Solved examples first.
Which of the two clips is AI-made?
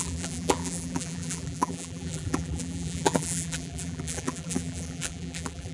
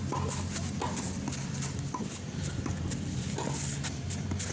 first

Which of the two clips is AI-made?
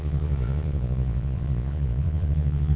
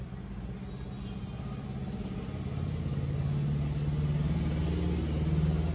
first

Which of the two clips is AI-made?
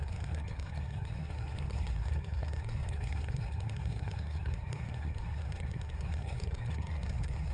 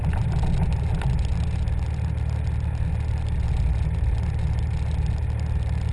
first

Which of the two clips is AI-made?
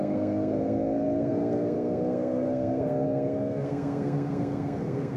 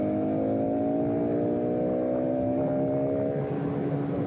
first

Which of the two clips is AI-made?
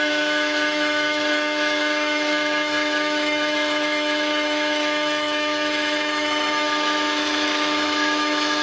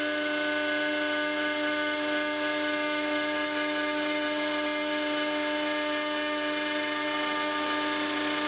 first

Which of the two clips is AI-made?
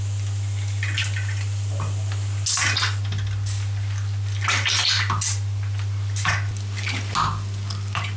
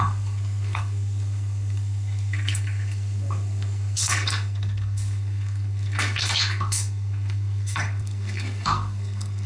second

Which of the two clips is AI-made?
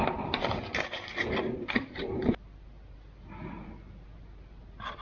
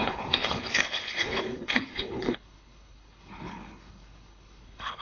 second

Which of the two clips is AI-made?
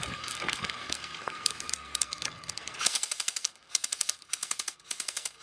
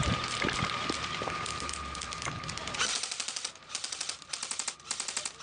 first